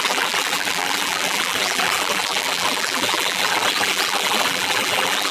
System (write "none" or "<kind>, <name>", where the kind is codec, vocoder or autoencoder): vocoder, BigVGAN v2